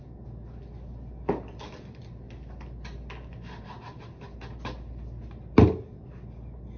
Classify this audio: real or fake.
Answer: real